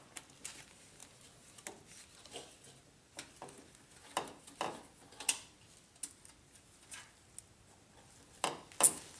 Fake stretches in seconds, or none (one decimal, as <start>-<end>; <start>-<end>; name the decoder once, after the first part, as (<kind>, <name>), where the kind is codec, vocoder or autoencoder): none